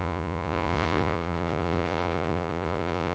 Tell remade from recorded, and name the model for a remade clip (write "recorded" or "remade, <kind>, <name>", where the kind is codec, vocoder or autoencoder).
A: remade, vocoder, Vocos